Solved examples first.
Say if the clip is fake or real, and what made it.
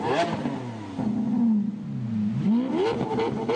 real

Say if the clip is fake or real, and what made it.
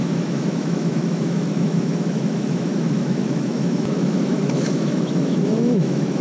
fake, autoencoder, DAC-VAE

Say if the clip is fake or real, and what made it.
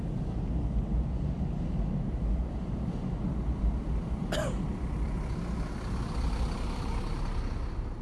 real